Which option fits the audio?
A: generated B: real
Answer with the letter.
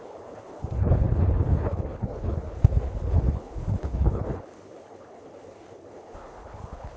A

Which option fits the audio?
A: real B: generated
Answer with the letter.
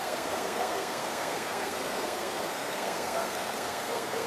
B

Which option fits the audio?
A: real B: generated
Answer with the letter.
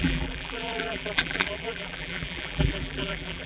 B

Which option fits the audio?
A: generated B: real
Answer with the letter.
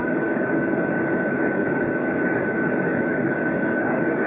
A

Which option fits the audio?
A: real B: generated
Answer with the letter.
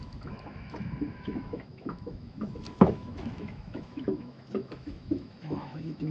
B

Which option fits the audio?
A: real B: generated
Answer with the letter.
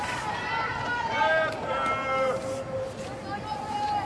A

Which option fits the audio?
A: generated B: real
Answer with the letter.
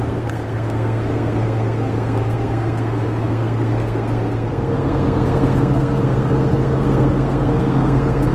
A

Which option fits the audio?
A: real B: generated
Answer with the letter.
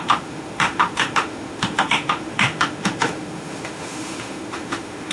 B